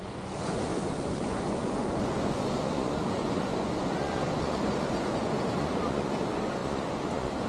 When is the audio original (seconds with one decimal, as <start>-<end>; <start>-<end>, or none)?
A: none